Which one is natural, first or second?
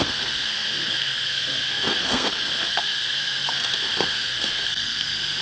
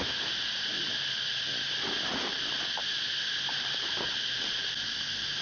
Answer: second